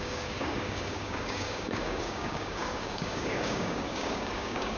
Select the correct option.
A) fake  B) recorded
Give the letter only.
A